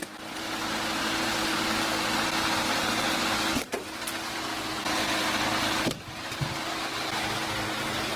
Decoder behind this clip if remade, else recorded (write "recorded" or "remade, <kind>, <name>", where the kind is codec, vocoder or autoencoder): recorded